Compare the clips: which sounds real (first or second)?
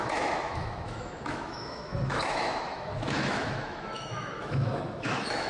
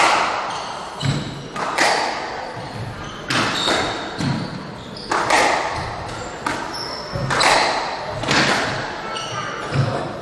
second